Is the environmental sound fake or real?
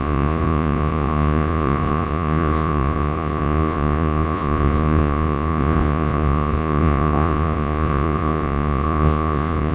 fake